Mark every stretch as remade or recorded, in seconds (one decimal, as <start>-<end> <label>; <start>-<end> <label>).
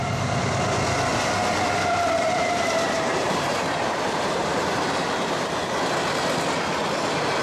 0.0-1.1 recorded; 1.1-5.5 remade; 5.5-7.4 recorded